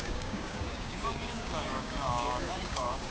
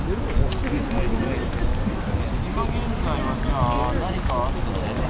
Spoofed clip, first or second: first